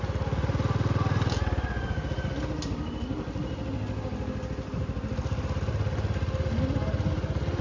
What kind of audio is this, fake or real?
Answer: real